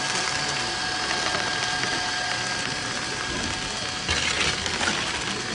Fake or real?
real